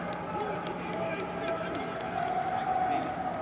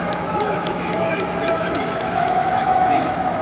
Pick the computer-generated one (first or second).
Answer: second